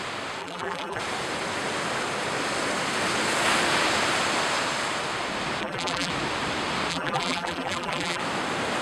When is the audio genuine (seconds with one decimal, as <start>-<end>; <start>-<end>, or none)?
0.0-0.4; 1.0-5.6; 6.1-6.9; 8.2-8.8